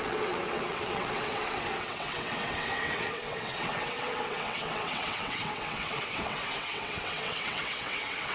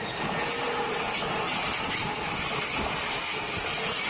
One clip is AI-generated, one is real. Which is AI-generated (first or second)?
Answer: first